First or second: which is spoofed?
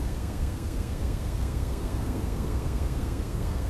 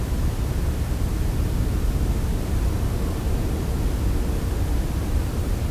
first